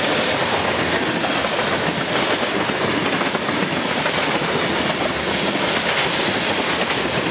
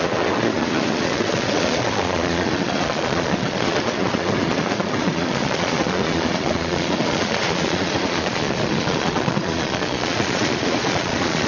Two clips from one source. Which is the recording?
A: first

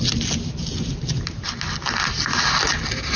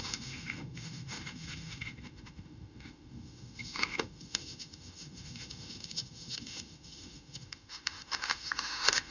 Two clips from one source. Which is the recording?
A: first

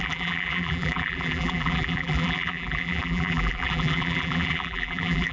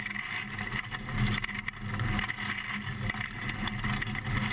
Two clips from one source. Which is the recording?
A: second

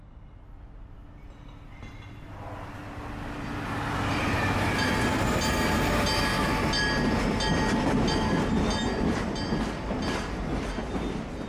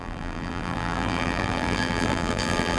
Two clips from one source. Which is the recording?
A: first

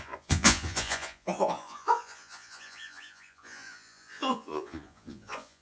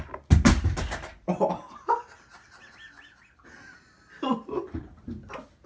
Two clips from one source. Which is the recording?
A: second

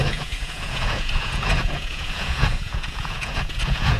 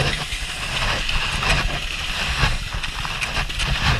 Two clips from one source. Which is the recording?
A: second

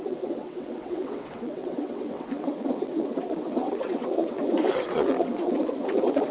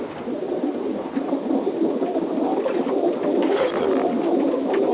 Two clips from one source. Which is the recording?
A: second